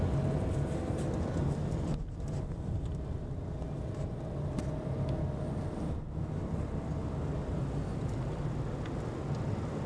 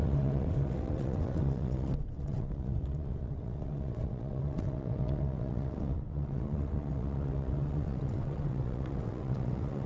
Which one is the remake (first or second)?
second